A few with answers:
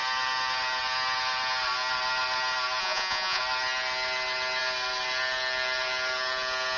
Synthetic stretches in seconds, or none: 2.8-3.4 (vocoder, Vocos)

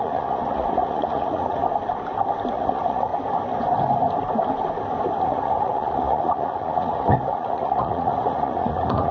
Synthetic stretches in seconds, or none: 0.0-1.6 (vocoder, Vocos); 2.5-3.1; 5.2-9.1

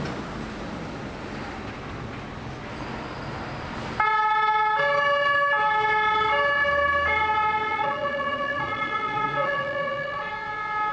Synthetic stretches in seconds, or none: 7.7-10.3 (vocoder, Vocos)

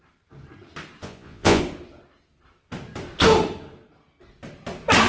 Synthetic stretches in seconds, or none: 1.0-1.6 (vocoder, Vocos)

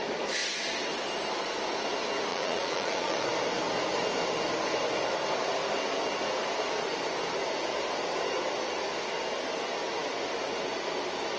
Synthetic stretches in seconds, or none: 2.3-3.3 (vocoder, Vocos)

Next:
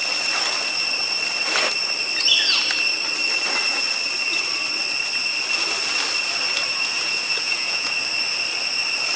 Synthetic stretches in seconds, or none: 6.7-7.9 (vocoder, Vocos)